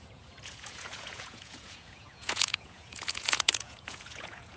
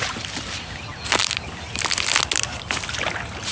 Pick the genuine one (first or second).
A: second